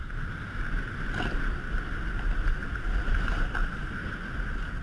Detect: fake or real real